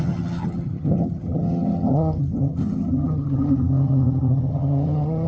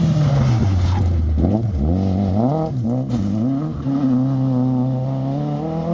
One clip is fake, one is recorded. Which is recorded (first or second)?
second